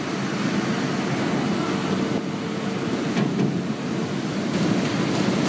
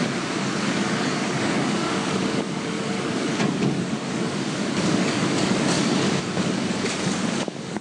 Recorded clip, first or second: first